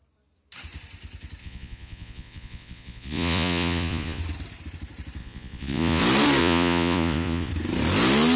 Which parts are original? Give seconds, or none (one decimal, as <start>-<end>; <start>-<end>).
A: 0.0-1.4; 4.2-5.2; 6.0-6.4; 7.5-8.4